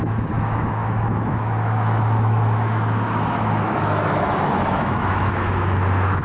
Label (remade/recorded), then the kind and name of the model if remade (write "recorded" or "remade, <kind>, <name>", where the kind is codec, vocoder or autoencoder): remade, autoencoder, DAC-VAE